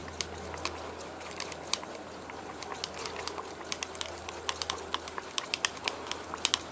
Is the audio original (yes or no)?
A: yes